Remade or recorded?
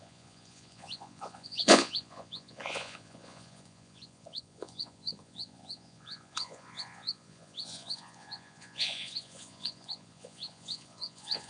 remade